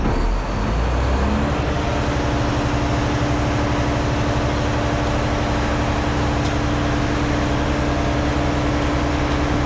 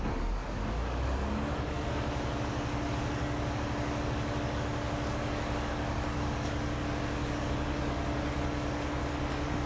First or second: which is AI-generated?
second